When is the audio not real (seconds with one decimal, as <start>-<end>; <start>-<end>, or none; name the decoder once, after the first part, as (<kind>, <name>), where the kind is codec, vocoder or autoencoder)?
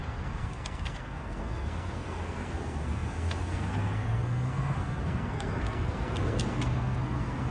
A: 0.0-7.5 (codec, SNAC)